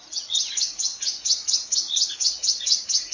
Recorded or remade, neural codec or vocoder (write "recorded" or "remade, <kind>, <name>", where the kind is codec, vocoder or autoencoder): remade, vocoder, Vocos